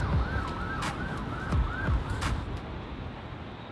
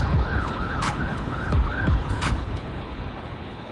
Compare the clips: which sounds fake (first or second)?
second